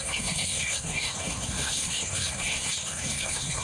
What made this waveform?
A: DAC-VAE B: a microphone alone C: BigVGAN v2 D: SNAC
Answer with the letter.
D